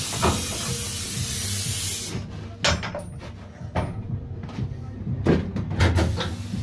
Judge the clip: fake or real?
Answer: real